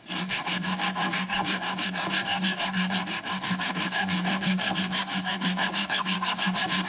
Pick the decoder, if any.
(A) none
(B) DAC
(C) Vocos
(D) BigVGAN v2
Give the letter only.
B